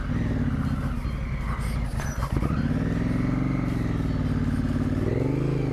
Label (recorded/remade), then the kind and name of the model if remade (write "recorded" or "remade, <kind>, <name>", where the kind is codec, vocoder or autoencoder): recorded